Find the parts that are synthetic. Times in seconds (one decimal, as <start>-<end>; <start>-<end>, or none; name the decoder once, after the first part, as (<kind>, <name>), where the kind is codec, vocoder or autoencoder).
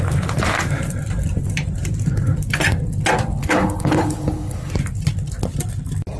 3.4-4.7 (codec, HILCodec)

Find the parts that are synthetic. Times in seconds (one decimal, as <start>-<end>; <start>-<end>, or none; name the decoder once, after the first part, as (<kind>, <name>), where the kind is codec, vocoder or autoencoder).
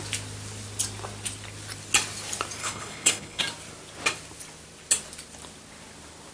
2.6-3.4 (codec, HILCodec)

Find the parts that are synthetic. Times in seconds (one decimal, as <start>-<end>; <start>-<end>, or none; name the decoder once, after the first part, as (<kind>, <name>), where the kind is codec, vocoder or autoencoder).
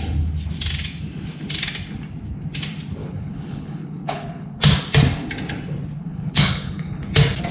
3.0-4.6 (codec, HILCodec); 6.0-7.1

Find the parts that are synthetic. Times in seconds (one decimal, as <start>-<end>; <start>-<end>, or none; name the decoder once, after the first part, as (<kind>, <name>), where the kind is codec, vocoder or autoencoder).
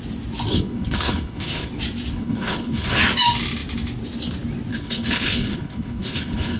0.5-1.7 (codec, HILCodec); 2.1-3.0; 4.7-6.6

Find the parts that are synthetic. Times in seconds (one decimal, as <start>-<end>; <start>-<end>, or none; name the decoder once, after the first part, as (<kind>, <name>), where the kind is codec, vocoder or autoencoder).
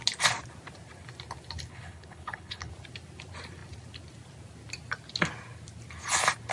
1.7-2.7 (codec, HILCodec)